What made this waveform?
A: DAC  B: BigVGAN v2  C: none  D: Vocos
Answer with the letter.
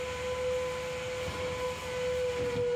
C